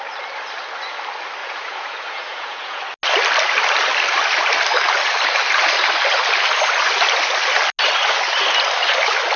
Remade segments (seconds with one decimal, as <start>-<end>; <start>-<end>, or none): 1.4-2.8